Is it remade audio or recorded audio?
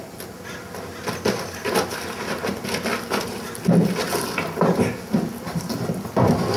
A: recorded